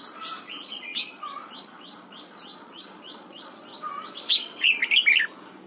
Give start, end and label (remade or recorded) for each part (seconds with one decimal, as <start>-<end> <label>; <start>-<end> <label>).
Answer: 0.0-3.7 remade; 3.7-4.2 recorded; 4.2-4.8 remade; 4.8-5.7 recorded

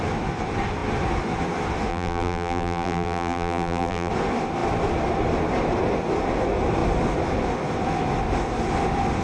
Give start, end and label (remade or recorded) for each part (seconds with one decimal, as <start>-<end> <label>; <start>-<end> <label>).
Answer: 0.0-1.9 recorded; 1.9-4.1 remade; 4.1-9.2 recorded

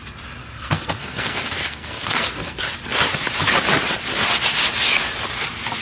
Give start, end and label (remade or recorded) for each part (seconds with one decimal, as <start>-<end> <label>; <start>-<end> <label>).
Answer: 0.0-0.4 recorded; 0.4-2.6 remade; 2.6-5.8 recorded

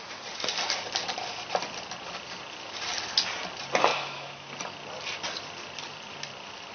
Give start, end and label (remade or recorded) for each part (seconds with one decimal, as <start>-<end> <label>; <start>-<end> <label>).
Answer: 0.0-3.9 recorded; 3.9-4.5 remade; 4.5-6.7 recorded

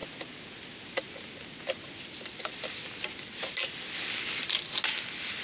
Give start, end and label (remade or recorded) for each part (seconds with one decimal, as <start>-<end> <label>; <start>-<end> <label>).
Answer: 0.0-5.4 recorded

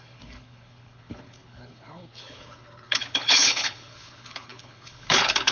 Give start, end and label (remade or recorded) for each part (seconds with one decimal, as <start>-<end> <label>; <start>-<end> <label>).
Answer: 0.0-5.5 remade

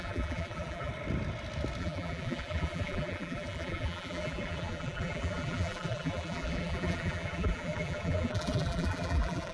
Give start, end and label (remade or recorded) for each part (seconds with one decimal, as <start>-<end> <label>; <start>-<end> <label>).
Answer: 0.0-0.9 remade; 0.9-1.8 recorded; 1.8-9.5 remade